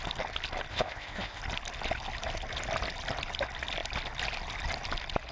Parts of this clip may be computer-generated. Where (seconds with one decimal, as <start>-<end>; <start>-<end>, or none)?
0.7-1.4